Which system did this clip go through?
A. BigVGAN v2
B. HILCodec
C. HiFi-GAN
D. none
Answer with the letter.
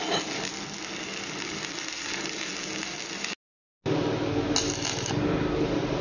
D